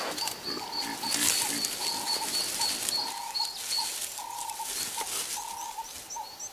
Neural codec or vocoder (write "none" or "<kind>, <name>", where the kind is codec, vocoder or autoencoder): none